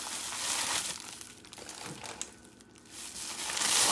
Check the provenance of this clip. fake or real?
real